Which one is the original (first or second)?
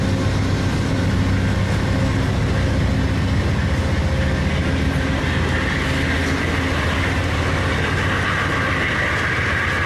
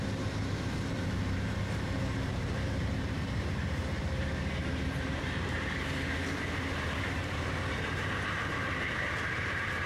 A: first